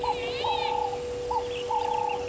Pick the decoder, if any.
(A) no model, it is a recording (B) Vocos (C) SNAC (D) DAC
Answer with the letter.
A